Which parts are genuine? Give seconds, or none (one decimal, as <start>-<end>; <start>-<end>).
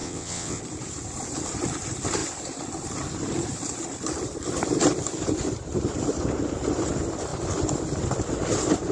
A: 0.6-8.9